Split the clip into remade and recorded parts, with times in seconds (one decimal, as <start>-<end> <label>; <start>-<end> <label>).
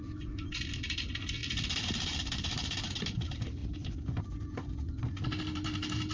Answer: 0.0-1.4 recorded; 1.4-3.0 remade; 3.0-6.1 recorded